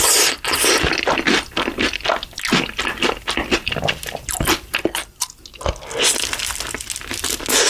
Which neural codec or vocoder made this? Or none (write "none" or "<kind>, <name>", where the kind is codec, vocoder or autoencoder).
none